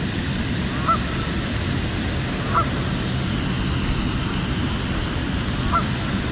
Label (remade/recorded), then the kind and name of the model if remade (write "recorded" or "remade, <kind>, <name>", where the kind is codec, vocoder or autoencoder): recorded